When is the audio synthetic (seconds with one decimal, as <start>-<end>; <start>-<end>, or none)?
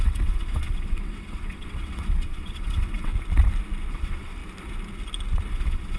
0.0-3.1; 3.9-4.4; 5.5-6.0